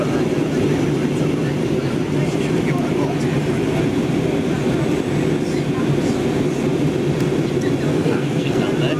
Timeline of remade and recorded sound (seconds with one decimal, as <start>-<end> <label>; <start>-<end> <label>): 0.0-7.9 recorded; 7.9-8.6 remade; 8.6-9.0 recorded